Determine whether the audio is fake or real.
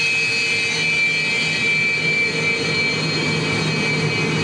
real